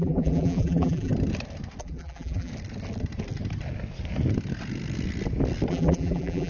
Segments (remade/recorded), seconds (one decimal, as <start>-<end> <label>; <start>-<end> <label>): 0.0-1.1 remade; 1.1-1.8 recorded; 1.8-2.5 remade; 2.5-5.7 recorded; 5.7-6.5 remade